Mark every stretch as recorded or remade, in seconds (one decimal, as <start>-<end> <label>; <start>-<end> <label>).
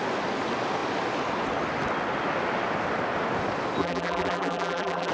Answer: 0.0-3.8 recorded; 3.8-5.1 remade